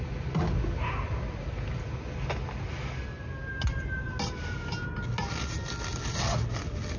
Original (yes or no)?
yes